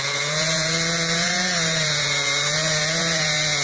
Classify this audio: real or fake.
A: fake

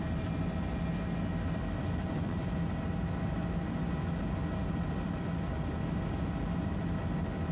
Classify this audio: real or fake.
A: real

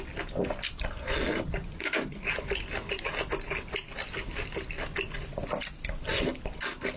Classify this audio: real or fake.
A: real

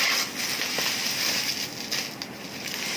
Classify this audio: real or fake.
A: real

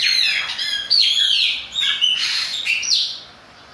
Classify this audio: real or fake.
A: fake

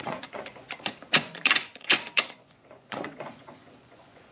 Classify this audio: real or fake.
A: fake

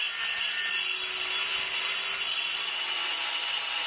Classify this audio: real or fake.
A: real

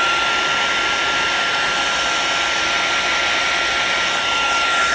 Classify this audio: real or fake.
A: real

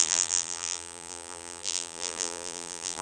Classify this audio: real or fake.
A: fake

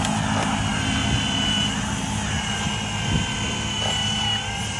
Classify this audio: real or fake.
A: real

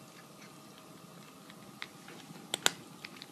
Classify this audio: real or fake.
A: real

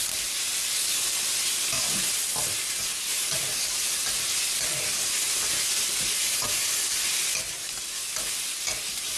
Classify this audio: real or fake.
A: real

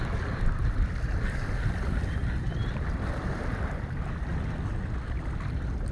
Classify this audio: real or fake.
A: real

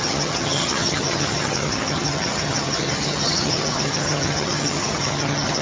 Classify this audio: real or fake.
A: fake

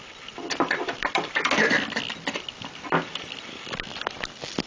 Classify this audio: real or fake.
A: real